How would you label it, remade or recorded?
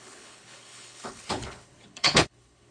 remade